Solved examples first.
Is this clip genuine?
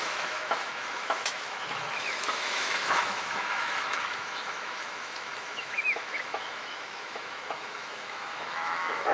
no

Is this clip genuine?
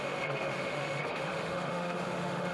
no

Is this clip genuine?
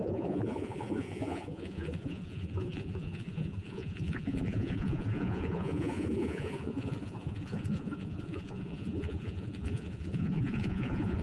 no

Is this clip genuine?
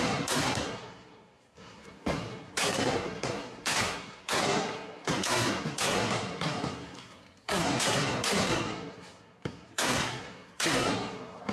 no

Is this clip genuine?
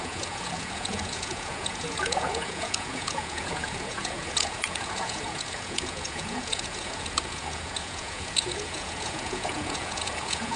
no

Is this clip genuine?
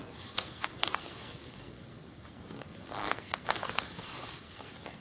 no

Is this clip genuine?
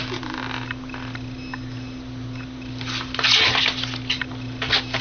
yes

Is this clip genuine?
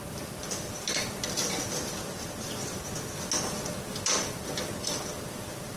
yes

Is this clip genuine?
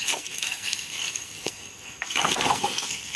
no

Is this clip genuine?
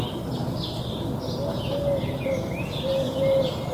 yes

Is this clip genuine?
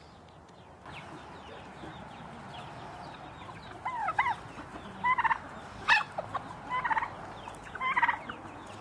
yes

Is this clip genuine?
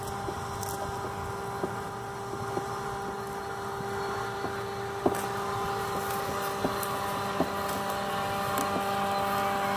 yes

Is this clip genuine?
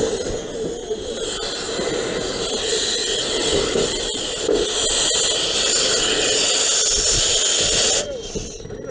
yes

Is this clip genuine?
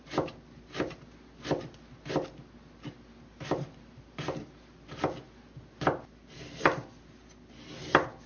yes